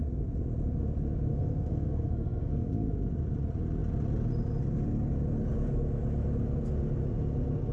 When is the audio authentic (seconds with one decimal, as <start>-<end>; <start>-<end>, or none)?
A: 0.0-1.3; 2.9-7.7